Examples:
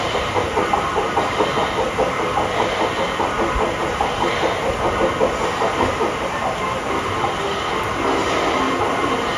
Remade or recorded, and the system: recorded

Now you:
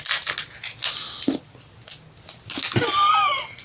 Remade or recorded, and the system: recorded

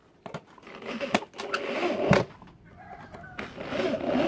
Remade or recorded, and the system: recorded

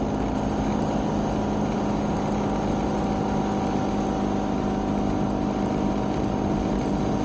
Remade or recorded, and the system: recorded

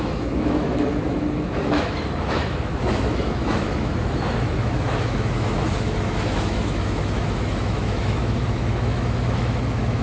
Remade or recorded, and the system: remade, autoencoder, DAC-VAE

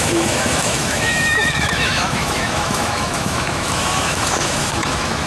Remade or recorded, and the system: remade, autoencoder, DAC-VAE